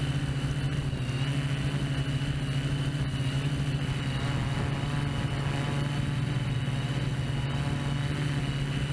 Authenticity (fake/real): real